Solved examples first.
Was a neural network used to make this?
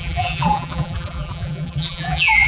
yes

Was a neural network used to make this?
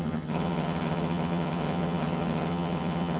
yes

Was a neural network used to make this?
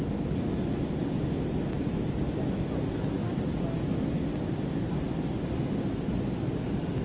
no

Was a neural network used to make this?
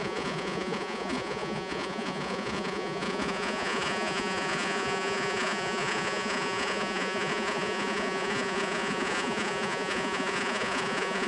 yes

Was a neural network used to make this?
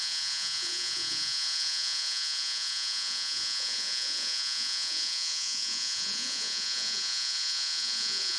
yes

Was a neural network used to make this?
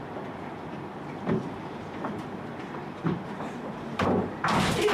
yes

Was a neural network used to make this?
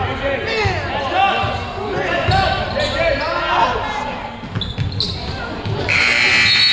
no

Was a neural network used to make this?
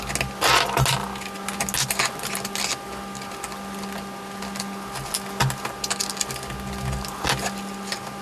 no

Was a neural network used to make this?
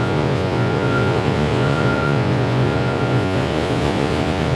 yes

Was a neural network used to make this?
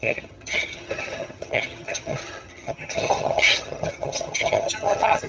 yes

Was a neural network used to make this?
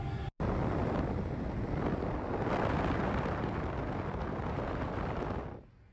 no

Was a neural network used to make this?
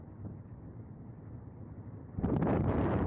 no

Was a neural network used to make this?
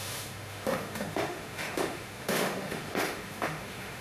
yes